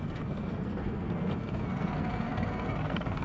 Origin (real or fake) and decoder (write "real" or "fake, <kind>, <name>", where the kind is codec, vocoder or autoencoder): fake, codec, SNAC